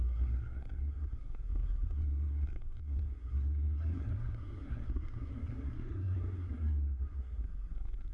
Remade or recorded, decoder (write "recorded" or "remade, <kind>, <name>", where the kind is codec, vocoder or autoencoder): remade, codec, SNAC